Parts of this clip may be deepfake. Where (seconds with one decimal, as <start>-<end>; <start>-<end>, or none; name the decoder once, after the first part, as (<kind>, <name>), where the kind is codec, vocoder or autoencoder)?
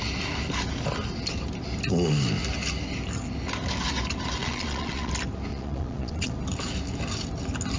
4.4-5.1 (vocoder, Vocos); 5.5-6.3